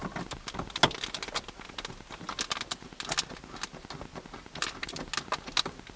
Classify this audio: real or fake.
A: real